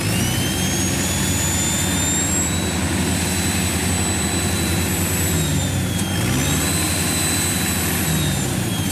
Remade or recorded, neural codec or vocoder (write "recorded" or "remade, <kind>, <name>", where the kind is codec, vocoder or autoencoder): recorded